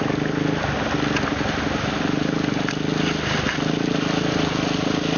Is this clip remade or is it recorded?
recorded